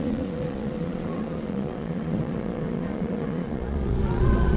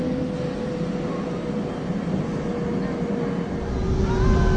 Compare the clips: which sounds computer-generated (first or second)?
first